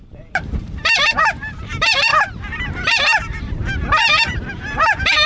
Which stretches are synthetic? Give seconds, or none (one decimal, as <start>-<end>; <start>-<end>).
0.0-5.3